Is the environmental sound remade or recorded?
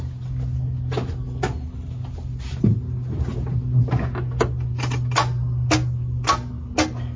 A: recorded